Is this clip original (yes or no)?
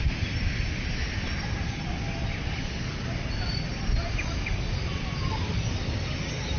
yes